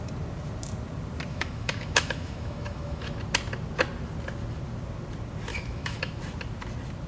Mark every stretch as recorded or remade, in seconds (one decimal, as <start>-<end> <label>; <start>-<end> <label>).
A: 0.0-1.3 recorded; 1.3-3.2 remade; 3.2-5.5 recorded; 5.5-6.2 remade; 6.2-7.1 recorded